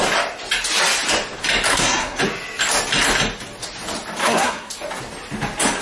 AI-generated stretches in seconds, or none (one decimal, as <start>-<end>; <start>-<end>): 1.7-2.2; 4.2-4.7